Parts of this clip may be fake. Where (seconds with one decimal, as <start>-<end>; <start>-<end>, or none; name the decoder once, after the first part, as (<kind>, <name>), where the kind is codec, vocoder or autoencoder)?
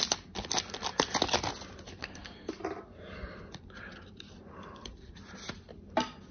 2.0-2.5 (codec, SNAC)